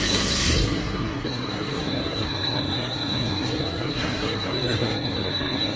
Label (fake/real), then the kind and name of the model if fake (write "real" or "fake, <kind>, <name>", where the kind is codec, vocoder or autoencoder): fake, codec, SNAC